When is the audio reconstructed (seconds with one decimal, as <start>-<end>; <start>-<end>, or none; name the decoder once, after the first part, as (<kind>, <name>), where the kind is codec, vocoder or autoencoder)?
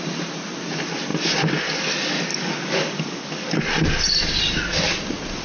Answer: 2.3-3.6 (codec, DAC)